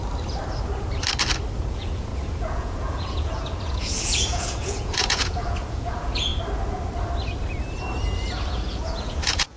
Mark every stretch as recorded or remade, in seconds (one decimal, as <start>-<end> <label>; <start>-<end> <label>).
0.0-1.7 recorded; 1.7-6.3 remade; 6.3-8.5 recorded; 8.5-9.6 remade